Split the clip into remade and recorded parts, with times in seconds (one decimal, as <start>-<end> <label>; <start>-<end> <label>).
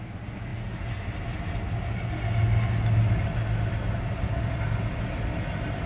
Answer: 0.0-5.9 recorded